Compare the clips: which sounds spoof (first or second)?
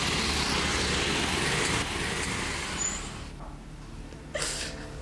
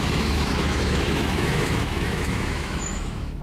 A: second